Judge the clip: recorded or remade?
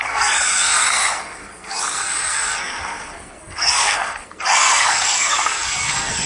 remade